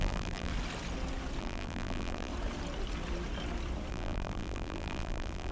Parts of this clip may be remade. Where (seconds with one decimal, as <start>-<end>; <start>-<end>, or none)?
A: 0.0-0.5; 1.4-2.3; 3.9-5.5

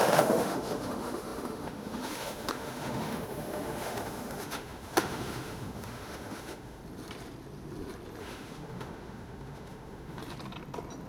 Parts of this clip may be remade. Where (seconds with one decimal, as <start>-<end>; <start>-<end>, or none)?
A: 0.0-6.8; 8.2-10.2

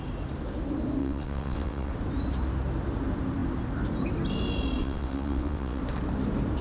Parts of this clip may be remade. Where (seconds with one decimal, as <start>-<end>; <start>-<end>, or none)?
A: 1.0-1.9; 4.8-5.8

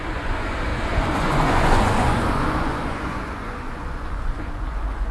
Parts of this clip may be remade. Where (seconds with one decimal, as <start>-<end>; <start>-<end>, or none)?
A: 0.0-5.1

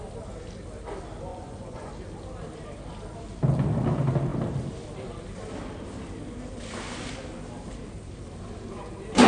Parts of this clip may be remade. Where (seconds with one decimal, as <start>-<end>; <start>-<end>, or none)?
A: 1.3-1.9

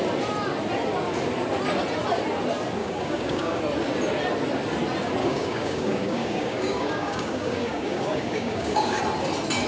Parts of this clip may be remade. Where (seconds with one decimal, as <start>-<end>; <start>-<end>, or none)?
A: 2.8-3.6; 5.2-9.0

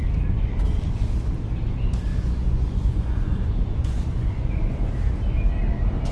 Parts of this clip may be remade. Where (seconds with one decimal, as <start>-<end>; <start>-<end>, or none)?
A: 2.1-4.9